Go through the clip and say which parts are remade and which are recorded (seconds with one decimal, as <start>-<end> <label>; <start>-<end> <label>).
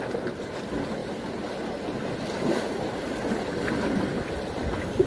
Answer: 0.0-5.1 recorded